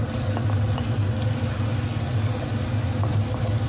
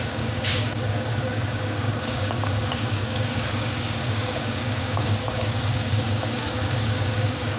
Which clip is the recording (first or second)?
first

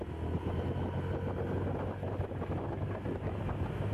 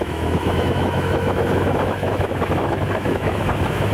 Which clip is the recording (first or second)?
first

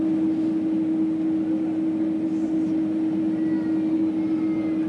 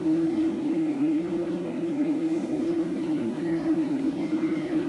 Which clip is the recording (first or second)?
first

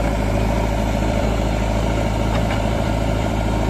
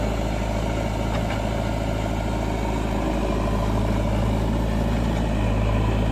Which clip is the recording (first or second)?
second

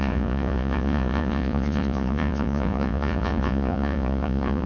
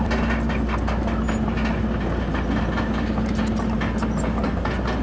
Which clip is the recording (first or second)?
second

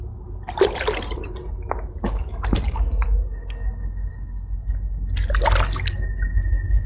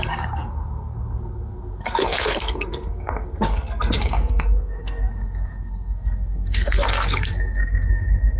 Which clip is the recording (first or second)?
first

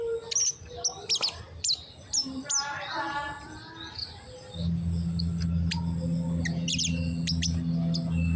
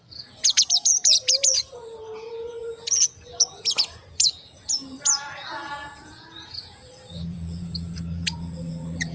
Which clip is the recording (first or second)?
first